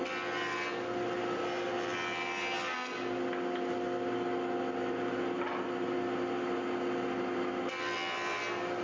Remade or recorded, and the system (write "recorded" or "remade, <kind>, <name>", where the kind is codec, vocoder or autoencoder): recorded